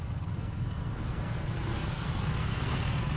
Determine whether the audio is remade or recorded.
remade